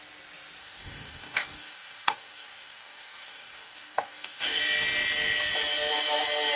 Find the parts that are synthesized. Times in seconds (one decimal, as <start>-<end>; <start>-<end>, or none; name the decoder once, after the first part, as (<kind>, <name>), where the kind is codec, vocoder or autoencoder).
0.6-4.6 (codec, DAC)